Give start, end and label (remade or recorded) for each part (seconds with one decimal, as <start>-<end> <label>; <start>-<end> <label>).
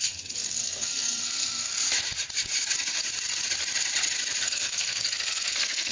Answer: 0.0-1.7 remade; 1.7-4.4 recorded; 4.4-5.9 remade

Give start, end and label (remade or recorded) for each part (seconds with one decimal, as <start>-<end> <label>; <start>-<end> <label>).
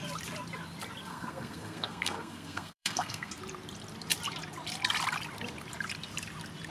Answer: 0.0-1.1 recorded; 1.1-3.3 remade; 3.3-6.7 recorded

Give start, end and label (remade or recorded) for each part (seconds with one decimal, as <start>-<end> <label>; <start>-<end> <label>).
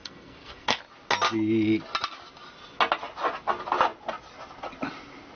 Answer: 0.0-0.8 remade; 0.8-5.3 recorded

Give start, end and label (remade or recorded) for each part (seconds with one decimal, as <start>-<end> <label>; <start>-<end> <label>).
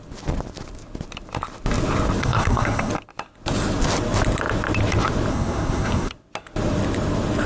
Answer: 0.0-2.2 recorded; 2.2-2.9 remade; 2.9-5.3 recorded; 5.3-6.1 remade; 6.1-7.5 recorded